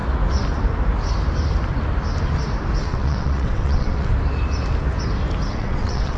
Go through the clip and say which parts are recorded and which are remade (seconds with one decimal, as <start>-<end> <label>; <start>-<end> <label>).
0.0-2.8 recorded; 2.8-4.1 remade; 4.1-5.5 recorded; 5.5-6.2 remade